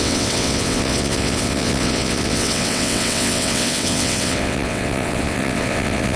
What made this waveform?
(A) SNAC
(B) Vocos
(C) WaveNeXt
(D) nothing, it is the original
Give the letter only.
C